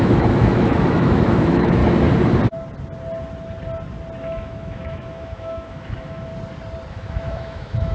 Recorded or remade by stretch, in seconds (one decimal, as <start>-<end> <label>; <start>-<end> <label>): 0.0-1.8 remade; 1.8-4.2 recorded; 4.2-6.3 remade; 6.3-6.9 recorded; 6.9-7.9 remade